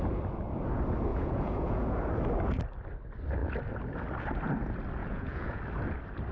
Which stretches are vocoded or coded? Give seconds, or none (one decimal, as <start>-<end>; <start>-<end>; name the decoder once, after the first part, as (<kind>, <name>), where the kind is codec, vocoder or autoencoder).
1.1-1.8 (vocoder, Vocos); 5.0-5.6